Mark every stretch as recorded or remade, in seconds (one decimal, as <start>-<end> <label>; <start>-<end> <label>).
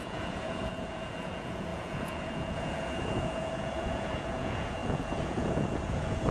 0.0-6.3 remade